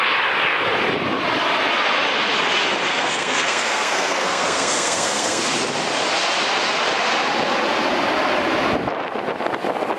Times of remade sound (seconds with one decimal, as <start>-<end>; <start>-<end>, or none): 2.9-5.4